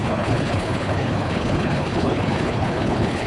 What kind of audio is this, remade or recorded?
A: remade